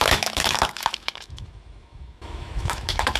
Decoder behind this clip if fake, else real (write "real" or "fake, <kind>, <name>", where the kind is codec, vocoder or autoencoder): fake, autoencoder, DAC-VAE